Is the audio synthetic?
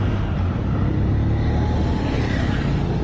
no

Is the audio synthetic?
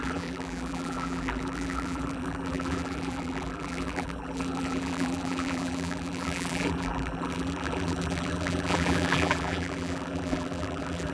yes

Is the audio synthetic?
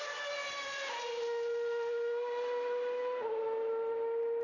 no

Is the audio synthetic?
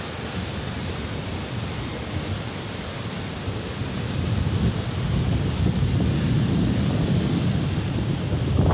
no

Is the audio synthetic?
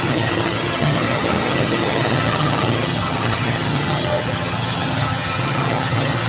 yes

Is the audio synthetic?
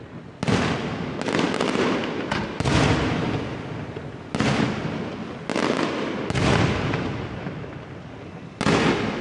no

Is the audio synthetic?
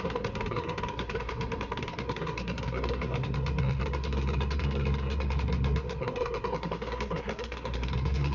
yes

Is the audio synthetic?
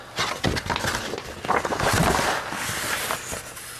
no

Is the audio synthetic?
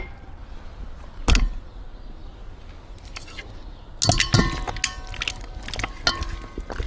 no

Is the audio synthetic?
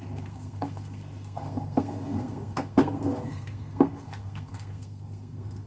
yes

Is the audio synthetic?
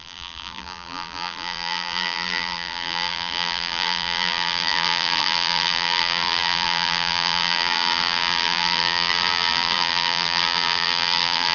yes